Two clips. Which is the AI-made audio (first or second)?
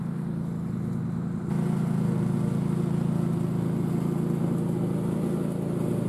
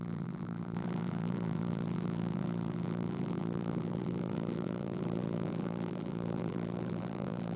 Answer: second